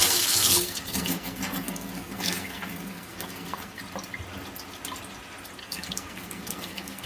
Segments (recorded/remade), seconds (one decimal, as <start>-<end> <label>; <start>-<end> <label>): 0.0-3.8 remade; 3.8-5.6 recorded; 5.6-7.1 remade